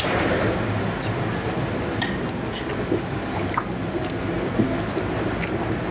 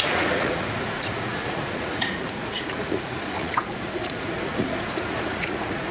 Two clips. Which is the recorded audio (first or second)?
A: first